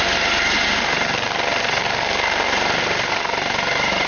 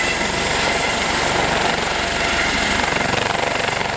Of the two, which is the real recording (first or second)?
first